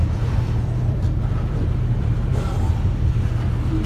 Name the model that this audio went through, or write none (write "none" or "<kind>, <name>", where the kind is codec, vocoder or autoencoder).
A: vocoder, BigVGAN v2